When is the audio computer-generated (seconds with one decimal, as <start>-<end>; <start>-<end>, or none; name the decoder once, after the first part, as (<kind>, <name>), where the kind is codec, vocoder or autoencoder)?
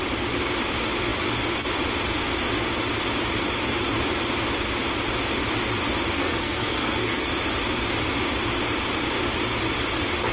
6.2-7.3 (codec, SNAC)